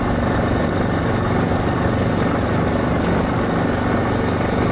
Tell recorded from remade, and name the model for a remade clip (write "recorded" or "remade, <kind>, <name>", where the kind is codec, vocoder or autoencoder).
recorded